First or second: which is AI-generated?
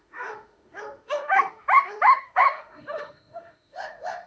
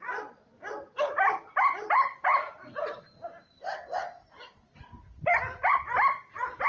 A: first